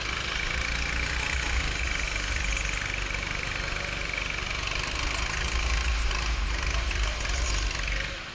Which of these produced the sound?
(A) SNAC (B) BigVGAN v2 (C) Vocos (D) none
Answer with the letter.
D